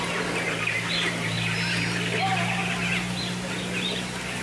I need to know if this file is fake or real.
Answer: real